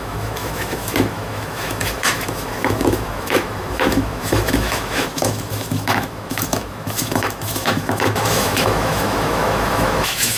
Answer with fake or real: fake